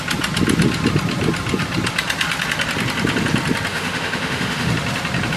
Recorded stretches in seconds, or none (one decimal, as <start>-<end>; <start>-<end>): 0.0-3.7; 4.7-5.4

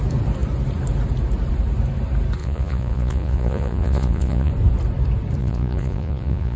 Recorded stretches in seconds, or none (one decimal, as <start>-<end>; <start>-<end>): 0.0-2.4; 4.5-5.4

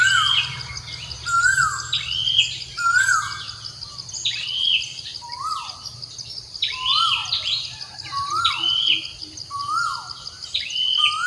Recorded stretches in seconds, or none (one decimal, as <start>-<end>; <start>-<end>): 0.0-11.3